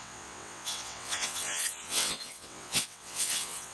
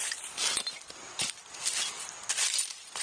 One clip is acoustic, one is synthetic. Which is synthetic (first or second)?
first